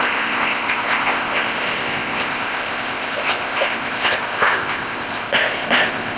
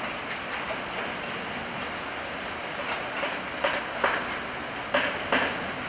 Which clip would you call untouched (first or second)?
second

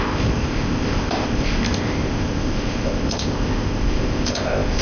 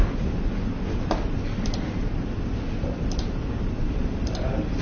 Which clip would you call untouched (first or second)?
second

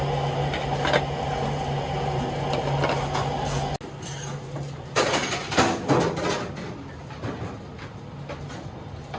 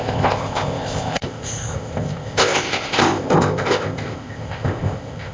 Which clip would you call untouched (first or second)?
first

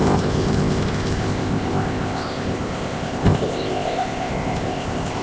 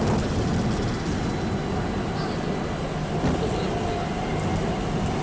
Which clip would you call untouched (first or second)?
second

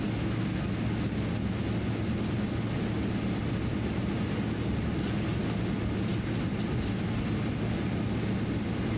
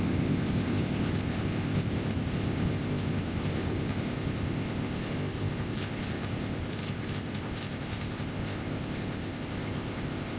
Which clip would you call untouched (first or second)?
first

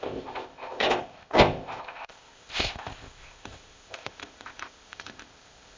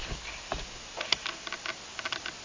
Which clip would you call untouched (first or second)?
second